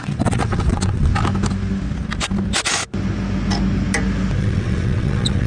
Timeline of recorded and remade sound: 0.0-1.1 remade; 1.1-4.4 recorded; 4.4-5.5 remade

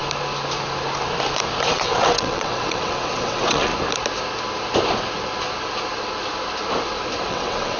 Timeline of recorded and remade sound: 0.0-1.7 recorded; 1.7-3.7 remade; 3.7-7.3 recorded; 7.3-7.8 remade

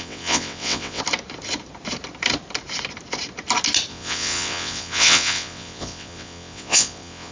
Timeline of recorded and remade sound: 0.0-1.0 remade; 1.0-3.9 recorded; 3.9-7.3 remade

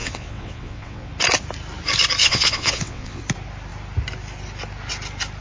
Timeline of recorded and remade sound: 0.0-1.1 remade; 1.1-2.2 recorded; 2.2-3.2 remade; 3.2-5.4 recorded

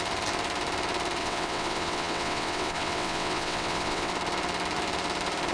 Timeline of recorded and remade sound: 0.0-1.2 recorded; 1.2-4.1 remade; 4.1-5.5 recorded

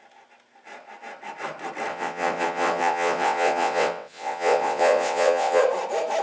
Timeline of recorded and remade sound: 0.0-1.9 recorded; 1.9-5.6 remade; 5.6-6.2 recorded

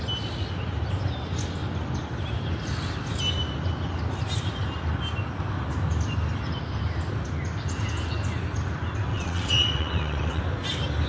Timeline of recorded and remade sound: 0.0-9.1 recorded; 9.1-10.4 remade; 10.4-11.1 recorded